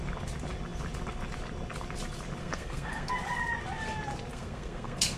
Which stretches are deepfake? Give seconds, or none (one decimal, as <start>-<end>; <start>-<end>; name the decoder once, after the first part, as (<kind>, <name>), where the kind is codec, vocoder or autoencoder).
2.4-3.1 (codec, SNAC); 4.3-5.2

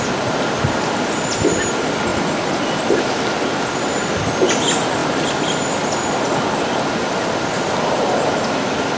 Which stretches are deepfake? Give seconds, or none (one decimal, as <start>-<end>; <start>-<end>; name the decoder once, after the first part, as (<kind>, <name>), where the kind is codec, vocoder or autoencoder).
none

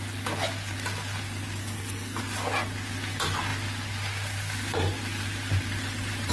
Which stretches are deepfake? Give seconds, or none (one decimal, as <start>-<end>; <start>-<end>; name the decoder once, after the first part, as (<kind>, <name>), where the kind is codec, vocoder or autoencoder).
1.6-2.2 (codec, SNAC)

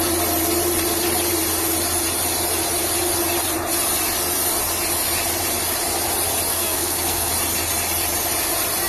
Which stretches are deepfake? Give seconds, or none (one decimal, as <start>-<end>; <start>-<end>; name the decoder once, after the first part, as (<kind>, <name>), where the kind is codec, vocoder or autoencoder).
6.5-7.3 (codec, SNAC)

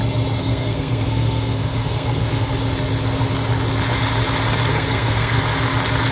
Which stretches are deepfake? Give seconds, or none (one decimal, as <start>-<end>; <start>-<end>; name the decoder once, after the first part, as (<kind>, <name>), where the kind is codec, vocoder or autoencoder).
0.4-2.5 (codec, SNAC); 4.7-5.4

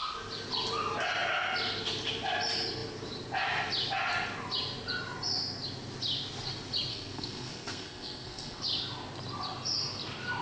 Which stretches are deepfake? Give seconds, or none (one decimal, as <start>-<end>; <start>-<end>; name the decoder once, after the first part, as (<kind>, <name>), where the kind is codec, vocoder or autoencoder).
6.9-8.6 (codec, SNAC)